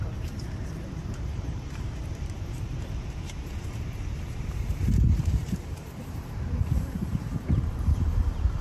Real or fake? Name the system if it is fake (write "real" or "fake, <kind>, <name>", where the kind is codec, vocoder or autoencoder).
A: fake, vocoder, BigVGAN v2